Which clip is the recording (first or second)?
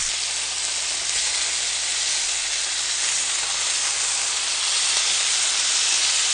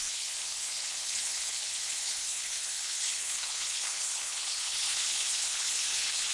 first